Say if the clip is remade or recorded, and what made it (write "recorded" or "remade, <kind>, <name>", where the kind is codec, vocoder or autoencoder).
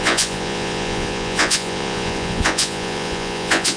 remade, vocoder, Vocos